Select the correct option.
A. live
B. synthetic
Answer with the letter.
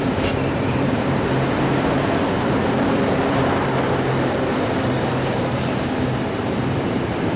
B